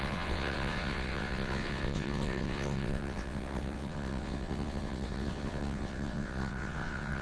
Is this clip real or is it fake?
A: fake